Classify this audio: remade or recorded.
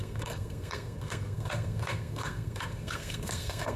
remade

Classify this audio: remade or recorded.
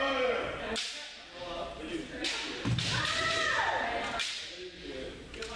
recorded